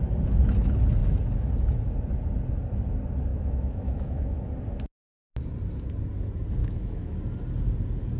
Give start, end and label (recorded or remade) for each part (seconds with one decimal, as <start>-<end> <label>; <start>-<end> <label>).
0.0-3.3 recorded; 3.3-4.4 remade; 4.4-6.6 recorded; 6.6-7.2 remade; 7.2-8.2 recorded